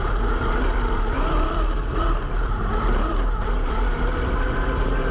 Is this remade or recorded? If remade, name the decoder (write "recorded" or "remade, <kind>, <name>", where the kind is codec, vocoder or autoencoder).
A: recorded